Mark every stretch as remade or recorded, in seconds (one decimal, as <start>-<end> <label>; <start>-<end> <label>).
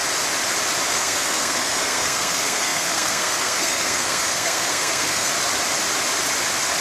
0.0-0.9 recorded; 0.9-5.3 remade; 5.3-6.8 recorded